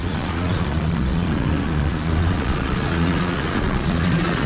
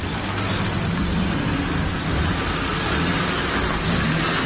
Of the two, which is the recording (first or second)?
second